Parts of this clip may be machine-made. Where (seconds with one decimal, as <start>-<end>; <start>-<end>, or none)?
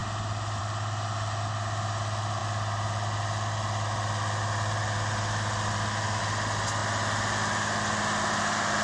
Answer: none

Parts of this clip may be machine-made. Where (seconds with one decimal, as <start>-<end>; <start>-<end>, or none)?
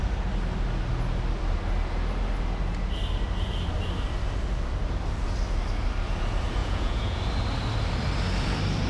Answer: 6.6-7.2